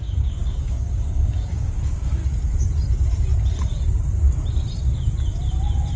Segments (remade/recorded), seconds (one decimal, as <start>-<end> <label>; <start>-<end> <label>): 0.0-2.2 remade; 2.2-6.0 recorded